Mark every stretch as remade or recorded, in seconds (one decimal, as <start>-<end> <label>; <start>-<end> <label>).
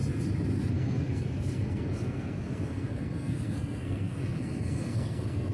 0.0-0.7 recorded; 0.7-5.5 remade